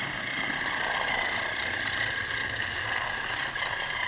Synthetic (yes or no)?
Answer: no